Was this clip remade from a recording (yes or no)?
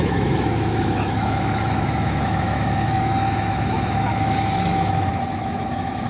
yes